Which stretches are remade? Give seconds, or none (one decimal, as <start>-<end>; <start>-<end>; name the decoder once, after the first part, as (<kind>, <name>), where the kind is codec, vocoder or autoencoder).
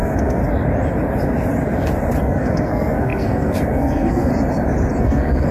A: 0.0-0.4 (codec, SNAC); 2.2-4.3; 5.0-5.5